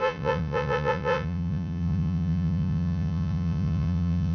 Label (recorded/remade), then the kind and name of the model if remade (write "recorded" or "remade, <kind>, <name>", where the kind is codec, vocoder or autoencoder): remade, vocoder, Vocos